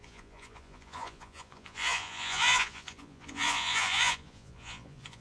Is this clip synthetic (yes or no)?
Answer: yes